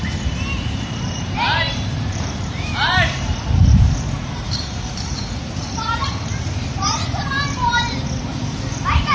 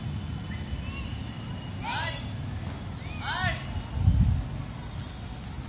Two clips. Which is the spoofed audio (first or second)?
first